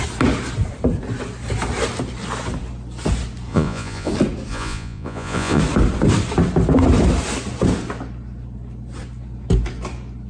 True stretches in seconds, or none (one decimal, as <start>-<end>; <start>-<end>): 0.0-3.5; 4.1-4.5; 5.6-10.3